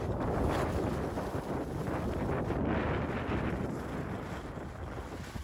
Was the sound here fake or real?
real